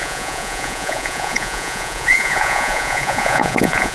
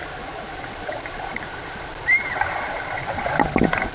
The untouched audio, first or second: second